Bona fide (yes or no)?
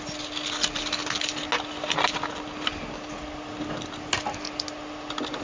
yes